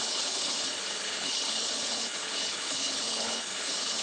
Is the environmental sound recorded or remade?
remade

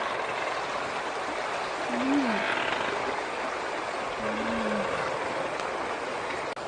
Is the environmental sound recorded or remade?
recorded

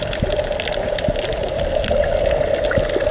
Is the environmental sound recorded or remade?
recorded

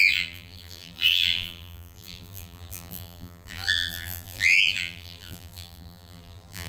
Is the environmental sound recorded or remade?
remade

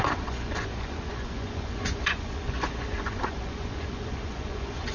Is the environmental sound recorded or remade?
remade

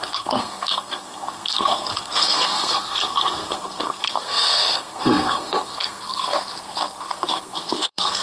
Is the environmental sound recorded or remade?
remade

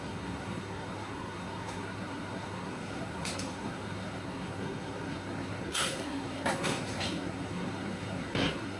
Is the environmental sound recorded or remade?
remade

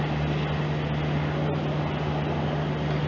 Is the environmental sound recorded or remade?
recorded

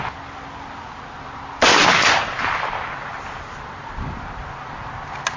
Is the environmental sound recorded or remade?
recorded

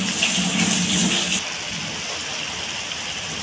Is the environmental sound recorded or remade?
recorded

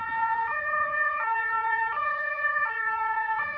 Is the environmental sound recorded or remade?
remade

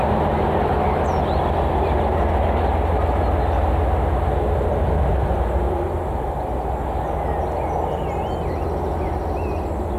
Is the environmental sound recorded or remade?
recorded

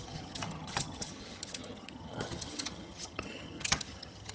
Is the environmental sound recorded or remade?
remade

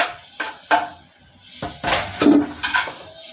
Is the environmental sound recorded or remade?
recorded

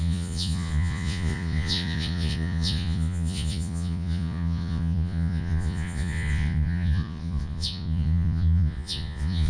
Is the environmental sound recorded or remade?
remade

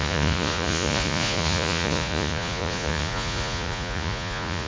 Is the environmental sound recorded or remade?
remade